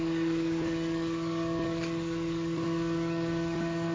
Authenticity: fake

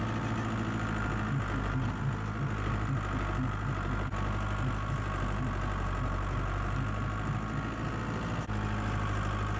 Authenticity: real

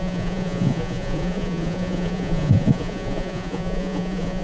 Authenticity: fake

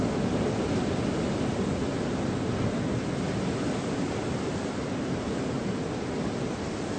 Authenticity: real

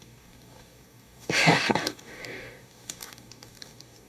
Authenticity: fake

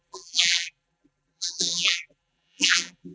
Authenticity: fake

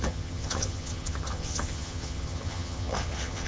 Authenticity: fake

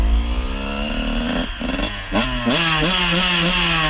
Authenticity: real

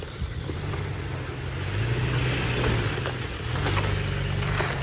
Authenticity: real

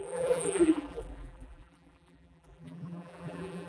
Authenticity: fake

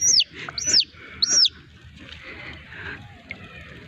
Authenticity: real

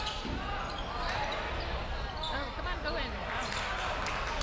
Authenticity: real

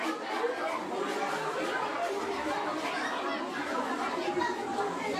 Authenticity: real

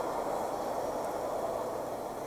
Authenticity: real